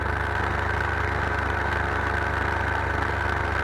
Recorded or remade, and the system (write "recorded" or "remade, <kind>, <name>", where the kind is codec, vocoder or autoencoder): recorded